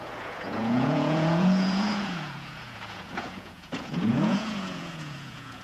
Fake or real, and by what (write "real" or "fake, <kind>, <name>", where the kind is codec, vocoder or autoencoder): fake, vocoder, Vocos